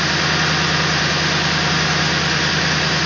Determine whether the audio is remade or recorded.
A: recorded